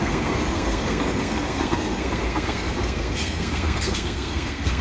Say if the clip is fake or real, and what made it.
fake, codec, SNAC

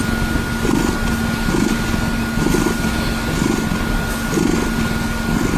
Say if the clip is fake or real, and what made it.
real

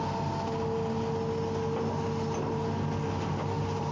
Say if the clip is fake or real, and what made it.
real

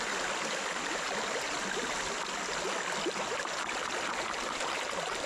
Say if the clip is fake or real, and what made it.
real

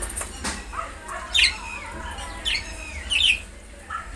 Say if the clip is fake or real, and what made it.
real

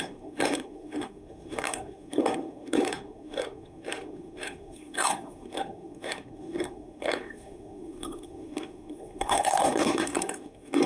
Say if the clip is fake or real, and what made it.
fake, codec, SNAC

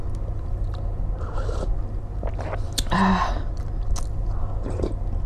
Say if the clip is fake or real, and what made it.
real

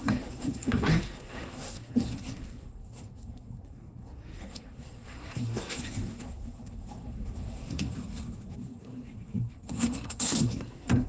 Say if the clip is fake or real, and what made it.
fake, codec, SNAC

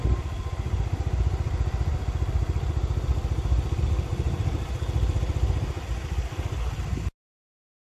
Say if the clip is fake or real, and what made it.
real